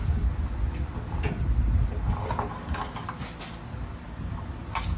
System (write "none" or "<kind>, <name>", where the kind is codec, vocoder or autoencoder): none